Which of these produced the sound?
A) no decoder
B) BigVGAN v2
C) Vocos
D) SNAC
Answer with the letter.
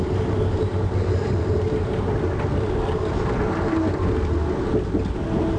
A